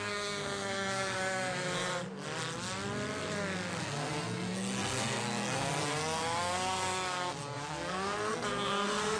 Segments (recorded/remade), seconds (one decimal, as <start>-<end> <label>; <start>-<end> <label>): 0.0-1.9 remade; 1.9-3.8 recorded; 3.8-9.2 remade